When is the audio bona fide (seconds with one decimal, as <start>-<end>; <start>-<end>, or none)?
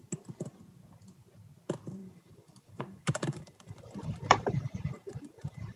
0.0-2.0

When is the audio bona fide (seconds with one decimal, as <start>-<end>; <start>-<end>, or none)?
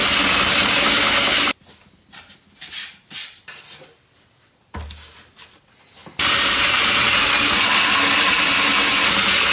0.0-9.5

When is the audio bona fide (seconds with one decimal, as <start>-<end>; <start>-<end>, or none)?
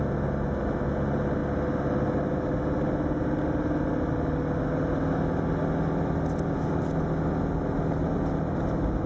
0.0-9.1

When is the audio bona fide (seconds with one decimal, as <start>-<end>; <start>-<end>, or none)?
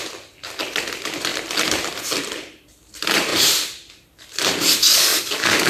0.0-4.9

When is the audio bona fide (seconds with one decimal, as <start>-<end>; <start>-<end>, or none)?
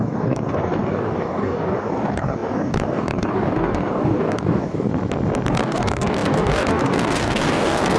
4.9-5.5